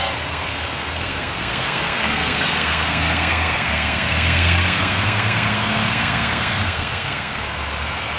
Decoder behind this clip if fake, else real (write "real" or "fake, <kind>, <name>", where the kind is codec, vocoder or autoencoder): fake, codec, SNAC